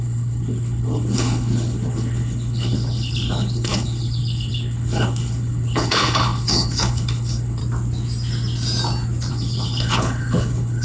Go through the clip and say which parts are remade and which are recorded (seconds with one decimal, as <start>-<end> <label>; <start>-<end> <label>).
0.0-7.6 remade; 7.6-9.3 recorded; 9.3-10.8 remade